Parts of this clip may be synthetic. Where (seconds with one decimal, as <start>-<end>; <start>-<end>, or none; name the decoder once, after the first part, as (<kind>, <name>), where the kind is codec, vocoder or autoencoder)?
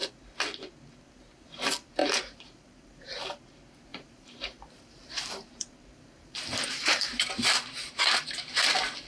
2.0-3.2 (vocoder, BigVGAN v2); 3.9-8.7